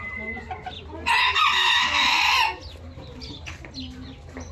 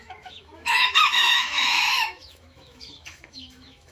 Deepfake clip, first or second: second